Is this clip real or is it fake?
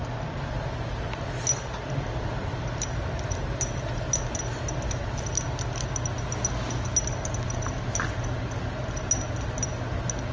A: real